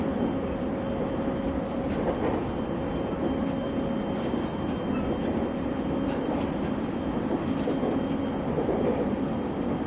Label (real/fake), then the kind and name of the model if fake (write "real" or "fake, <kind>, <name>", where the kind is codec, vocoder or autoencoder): real